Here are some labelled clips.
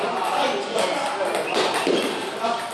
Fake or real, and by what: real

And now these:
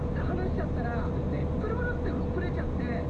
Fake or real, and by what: real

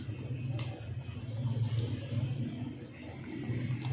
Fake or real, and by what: real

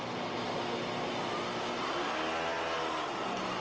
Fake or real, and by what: real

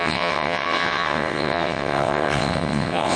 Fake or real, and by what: fake, vocoder, WaveNeXt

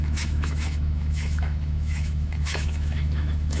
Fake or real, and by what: fake, autoencoder, DAC-VAE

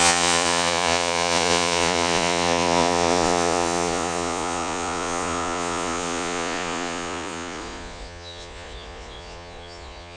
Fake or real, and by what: fake, vocoder, Vocos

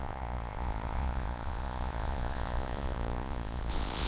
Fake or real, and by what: fake, vocoder, Vocos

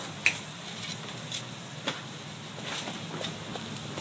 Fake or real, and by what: real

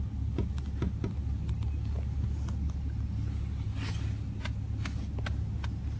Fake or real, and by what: real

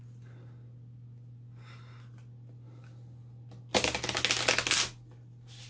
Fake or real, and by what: real